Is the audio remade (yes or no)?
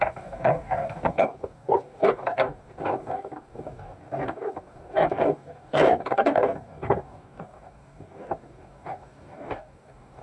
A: yes